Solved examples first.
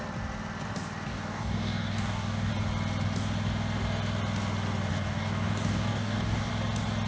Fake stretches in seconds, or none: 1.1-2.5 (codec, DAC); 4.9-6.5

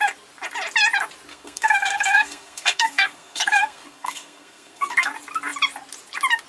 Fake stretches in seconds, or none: 1.3-5.1 (codec, SNAC)

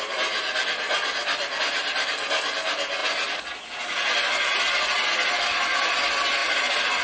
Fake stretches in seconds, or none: 1.2-1.8 (vocoder, BigVGAN v2)

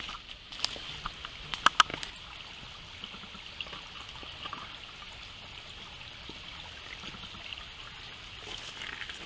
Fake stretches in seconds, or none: none